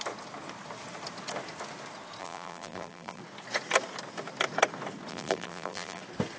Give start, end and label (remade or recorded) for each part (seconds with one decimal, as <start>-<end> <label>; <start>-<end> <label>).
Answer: 0.0-2.2 recorded; 2.2-3.2 remade; 3.2-5.1 recorded; 5.1-6.0 remade; 6.0-6.4 recorded